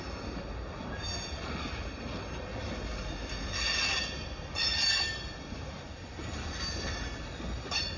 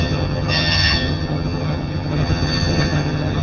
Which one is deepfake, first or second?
second